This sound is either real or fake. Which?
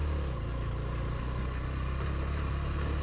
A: real